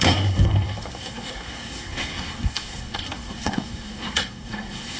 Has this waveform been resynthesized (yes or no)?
yes